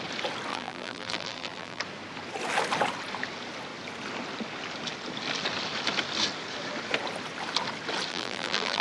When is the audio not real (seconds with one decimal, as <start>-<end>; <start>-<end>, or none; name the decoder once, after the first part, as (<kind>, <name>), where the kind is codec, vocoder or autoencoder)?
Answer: 0.5-1.8 (vocoder, BigVGAN v2); 8.1-8.8